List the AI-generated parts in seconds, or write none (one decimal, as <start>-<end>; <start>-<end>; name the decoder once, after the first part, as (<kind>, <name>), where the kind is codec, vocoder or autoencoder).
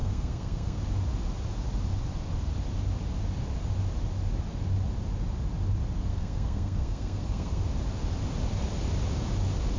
0.0-0.8 (codec, SNAC); 6.1-7.6